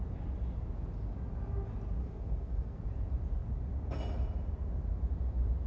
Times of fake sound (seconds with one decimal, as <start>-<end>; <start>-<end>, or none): 2.0-2.8